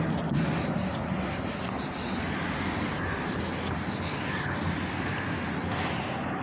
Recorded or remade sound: recorded